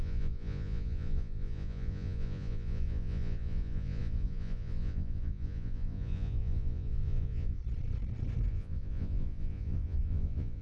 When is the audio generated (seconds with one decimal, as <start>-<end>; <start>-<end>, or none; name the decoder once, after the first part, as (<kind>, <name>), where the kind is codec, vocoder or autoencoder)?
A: 0.0-7.6 (vocoder, Vocos); 8.5-10.6